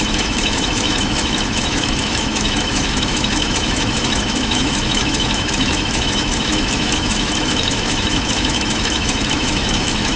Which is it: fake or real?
fake